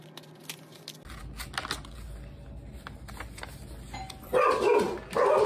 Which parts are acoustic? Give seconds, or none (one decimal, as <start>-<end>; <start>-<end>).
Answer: 0.0-5.5